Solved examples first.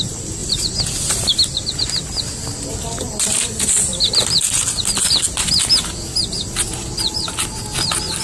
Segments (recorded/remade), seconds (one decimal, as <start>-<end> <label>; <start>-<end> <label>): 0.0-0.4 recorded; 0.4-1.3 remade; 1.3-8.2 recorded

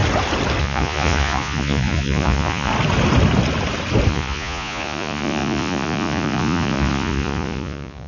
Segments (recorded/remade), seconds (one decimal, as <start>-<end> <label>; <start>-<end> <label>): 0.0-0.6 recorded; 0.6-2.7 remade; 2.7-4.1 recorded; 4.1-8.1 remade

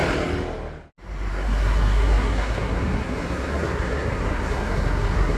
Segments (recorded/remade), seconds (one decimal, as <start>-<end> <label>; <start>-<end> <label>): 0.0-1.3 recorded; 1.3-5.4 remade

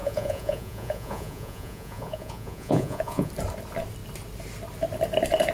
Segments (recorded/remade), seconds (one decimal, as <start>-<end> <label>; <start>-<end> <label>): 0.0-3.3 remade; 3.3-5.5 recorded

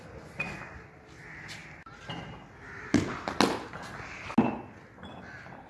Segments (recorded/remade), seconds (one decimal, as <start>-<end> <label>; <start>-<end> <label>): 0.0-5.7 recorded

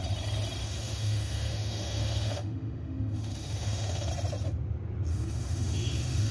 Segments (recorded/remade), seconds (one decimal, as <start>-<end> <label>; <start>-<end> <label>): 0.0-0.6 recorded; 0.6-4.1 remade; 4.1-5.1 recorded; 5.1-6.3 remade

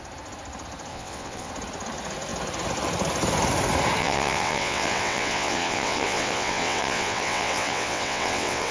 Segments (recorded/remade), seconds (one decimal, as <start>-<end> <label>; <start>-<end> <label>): 0.0-0.9 recorded; 0.9-1.5 remade; 1.5-4.0 recorded; 4.0-8.7 remade

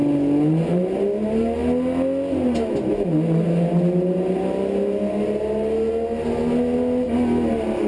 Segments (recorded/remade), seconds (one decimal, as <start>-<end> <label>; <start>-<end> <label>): 0.0-7.9 recorded